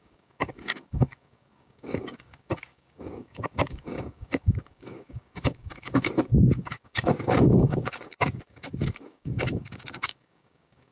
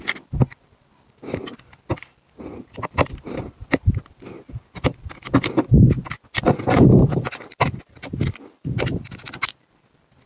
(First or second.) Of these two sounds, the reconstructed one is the first